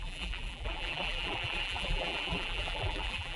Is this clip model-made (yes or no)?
yes